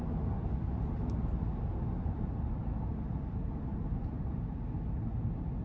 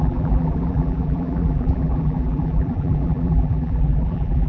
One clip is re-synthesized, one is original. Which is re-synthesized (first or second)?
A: second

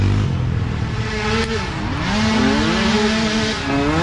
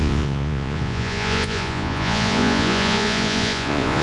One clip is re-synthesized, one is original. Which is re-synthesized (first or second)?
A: second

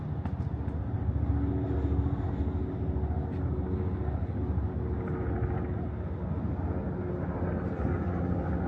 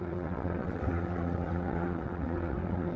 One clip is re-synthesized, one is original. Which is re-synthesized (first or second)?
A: second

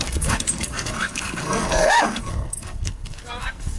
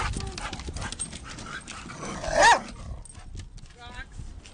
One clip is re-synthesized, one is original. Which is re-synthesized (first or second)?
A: first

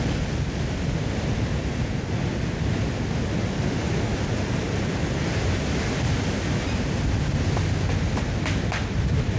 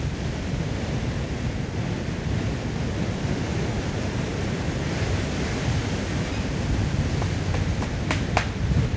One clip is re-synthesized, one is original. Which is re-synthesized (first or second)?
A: second